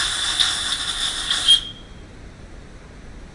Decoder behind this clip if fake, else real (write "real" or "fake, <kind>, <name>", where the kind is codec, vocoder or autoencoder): real